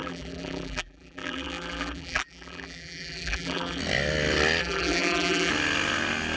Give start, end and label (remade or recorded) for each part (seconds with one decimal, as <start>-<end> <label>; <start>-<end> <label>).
0.0-3.8 remade; 3.8-4.6 recorded; 4.6-5.5 remade; 5.5-6.4 recorded